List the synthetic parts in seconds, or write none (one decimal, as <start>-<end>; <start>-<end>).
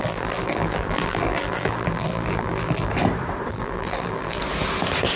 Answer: 0.0-2.9; 3.5-4.4